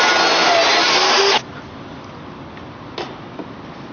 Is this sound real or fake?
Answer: real